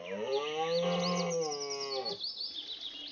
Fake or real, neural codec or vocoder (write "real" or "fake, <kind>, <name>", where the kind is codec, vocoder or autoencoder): real